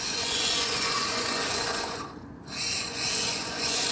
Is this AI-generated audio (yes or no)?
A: yes